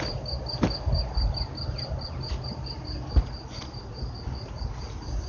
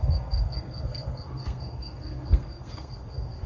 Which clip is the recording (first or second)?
first